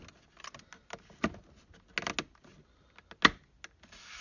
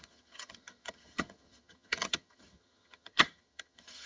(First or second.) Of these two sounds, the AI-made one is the second